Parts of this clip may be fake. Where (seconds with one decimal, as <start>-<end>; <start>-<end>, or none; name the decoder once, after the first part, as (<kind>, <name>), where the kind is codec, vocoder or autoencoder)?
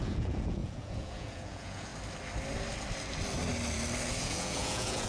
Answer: 0.0-1.9 (vocoder, Vocos); 4.2-5.1